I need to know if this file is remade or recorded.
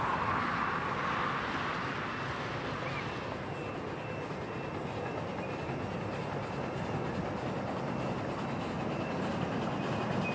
recorded